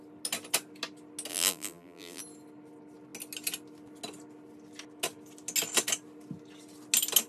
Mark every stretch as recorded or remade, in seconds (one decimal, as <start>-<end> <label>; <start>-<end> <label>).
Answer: 0.0-1.3 recorded; 1.3-2.2 remade; 2.2-7.3 recorded